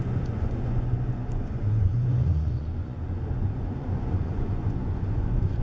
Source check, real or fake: fake